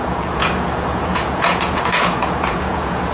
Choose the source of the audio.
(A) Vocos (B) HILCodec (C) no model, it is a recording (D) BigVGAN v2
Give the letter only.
A